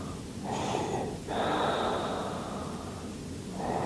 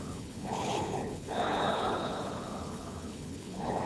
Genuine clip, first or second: first